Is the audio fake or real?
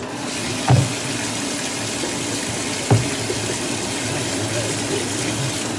real